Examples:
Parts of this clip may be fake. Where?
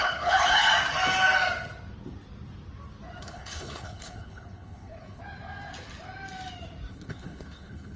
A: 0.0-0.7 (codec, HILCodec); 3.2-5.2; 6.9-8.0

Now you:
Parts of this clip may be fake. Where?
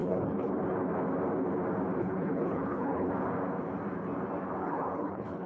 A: 0.0-0.5 (codec, HILCodec); 2.0-3.1; 4.6-5.5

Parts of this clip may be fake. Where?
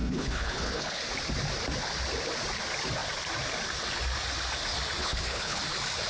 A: 0.0-1.0 (codec, HILCodec); 5.0-5.6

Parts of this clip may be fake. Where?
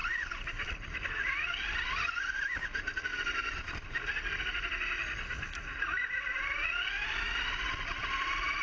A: none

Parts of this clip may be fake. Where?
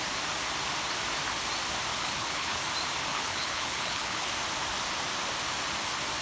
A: 1.9-2.6 (codec, HILCodec); 3.1-4.3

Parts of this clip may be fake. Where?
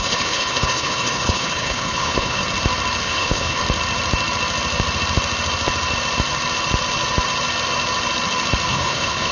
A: 0.0-2.4 (codec, HILCodec); 3.0-3.6; 8.7-9.3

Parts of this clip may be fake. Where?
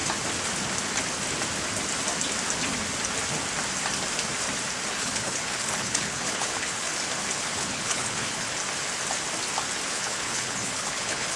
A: 4.9-6.9 (codec, HILCodec); 7.4-8.6; 9.9-11.4